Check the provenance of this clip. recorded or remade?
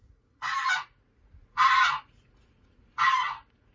remade